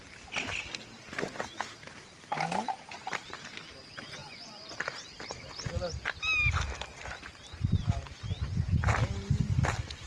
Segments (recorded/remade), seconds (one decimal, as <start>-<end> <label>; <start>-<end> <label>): 0.0-4.2 recorded; 4.2-4.7 remade; 4.7-10.1 recorded